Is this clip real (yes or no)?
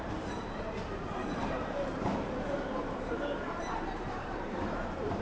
no